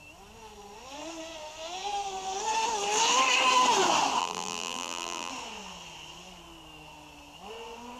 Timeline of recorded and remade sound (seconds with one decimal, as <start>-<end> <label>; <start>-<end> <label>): 0.0-4.2 recorded; 4.2-5.3 remade; 5.3-8.0 recorded